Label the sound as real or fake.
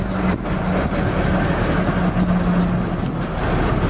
real